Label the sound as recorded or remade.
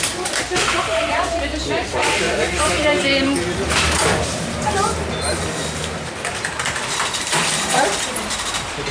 remade